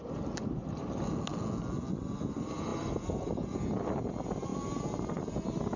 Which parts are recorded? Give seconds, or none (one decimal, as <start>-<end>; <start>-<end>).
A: 1.0-4.5; 5.3-5.8